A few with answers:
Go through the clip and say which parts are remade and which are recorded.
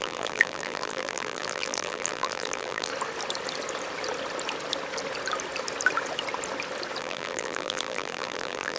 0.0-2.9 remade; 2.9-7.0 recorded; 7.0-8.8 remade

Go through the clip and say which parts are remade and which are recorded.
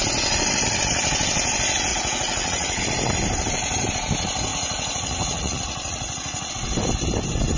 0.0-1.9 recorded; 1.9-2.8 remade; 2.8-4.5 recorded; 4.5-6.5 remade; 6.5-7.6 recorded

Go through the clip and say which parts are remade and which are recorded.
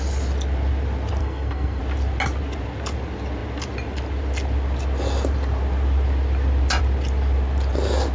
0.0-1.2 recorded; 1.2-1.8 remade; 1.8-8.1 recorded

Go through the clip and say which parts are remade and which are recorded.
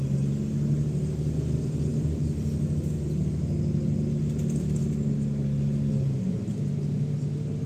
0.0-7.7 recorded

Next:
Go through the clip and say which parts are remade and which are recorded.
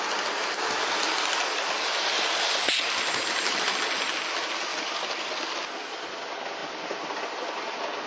0.0-4.7 recorded; 4.7-5.4 remade; 5.4-6.6 recorded; 6.6-7.5 remade; 7.5-8.1 recorded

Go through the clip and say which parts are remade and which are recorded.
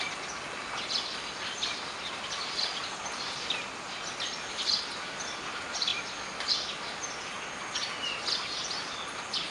0.0-9.5 recorded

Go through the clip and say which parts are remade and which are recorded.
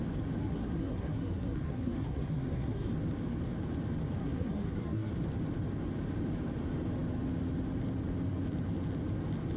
0.0-0.4 recorded; 0.4-2.9 remade; 2.9-4.2 recorded; 4.2-5.1 remade; 5.1-9.6 recorded